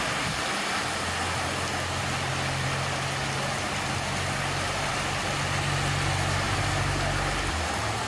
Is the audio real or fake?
real